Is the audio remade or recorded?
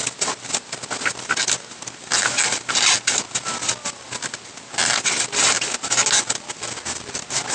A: recorded